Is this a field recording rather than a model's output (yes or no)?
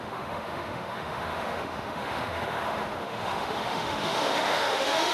no